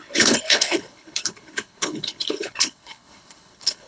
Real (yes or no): no